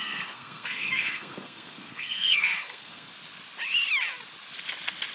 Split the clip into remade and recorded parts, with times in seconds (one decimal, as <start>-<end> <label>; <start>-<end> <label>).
0.0-3.1 remade; 3.1-5.1 recorded